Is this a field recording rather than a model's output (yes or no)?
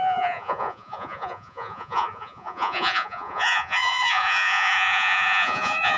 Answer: no